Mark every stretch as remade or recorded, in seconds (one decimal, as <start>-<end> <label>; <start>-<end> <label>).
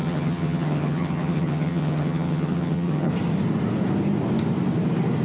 0.0-3.1 remade; 3.1-5.2 recorded